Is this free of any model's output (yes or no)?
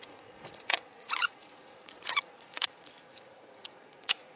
no